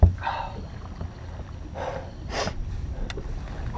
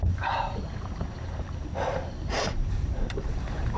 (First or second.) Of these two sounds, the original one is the first